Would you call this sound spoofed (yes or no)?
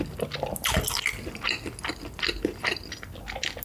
no